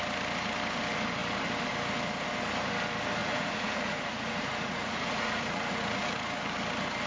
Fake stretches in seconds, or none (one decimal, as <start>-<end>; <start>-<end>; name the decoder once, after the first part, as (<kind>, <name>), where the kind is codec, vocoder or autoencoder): 3.2-6.4 (vocoder, Vocos)